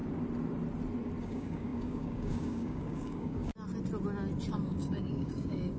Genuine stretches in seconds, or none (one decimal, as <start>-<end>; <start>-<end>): 0.0-1.2; 3.5-4.5